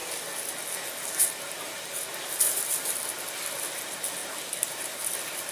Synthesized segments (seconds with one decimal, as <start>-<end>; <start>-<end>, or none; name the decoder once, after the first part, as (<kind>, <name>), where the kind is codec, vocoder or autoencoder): none